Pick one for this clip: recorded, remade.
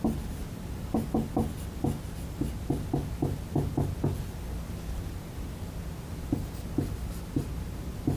recorded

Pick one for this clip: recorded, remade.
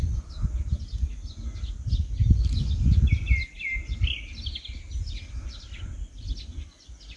recorded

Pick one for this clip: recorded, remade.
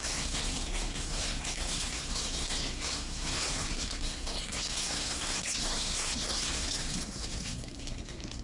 remade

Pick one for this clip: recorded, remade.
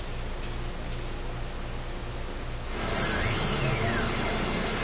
recorded